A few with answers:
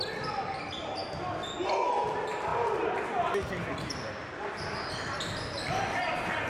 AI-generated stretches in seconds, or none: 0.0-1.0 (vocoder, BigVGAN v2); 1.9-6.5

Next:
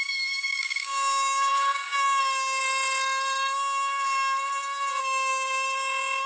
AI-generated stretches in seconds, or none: 0.0-2.6 (codec, DAC); 5.0-6.3